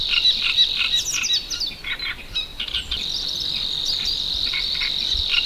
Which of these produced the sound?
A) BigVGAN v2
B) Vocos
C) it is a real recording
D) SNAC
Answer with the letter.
C